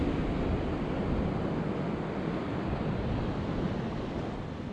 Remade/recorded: recorded